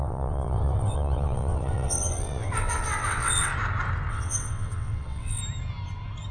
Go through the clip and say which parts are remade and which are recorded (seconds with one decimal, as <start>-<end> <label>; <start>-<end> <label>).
0.0-3.5 remade; 3.5-4.1 recorded; 4.1-5.4 remade; 5.4-6.3 recorded

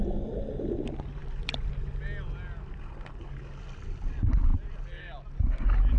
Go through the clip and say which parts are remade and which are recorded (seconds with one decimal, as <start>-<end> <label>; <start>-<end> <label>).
0.0-6.0 recorded

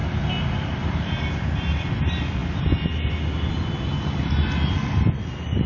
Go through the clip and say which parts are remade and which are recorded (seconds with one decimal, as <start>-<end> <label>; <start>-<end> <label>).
0.0-5.7 recorded

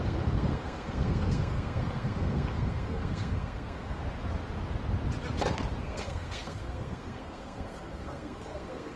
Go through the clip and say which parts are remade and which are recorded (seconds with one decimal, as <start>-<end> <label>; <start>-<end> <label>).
0.0-4.0 remade; 4.0-5.8 recorded; 5.8-9.0 remade

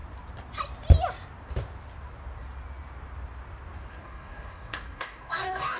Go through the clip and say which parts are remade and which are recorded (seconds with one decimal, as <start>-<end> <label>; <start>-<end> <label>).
0.0-3.9 recorded; 3.9-5.8 remade

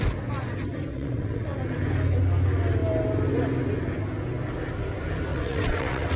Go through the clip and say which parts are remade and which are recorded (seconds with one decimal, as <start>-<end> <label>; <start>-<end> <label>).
0.0-0.9 recorded; 0.9-1.6 remade; 1.6-5.3 recorded; 5.3-6.2 remade

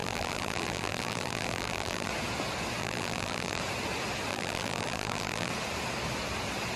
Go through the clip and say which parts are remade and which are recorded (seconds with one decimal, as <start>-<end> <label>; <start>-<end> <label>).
0.0-2.1 remade; 2.1-2.8 recorded; 2.8-3.6 remade; 3.6-4.3 recorded; 4.3-5.5 remade; 5.5-6.8 recorded

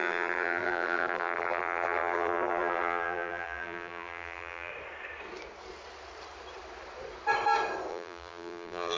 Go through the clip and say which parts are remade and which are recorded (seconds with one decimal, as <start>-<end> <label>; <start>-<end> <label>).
0.0-4.7 remade; 4.7-7.9 recorded; 7.9-9.0 remade